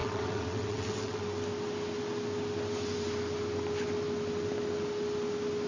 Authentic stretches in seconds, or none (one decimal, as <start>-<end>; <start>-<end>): 1.2-5.7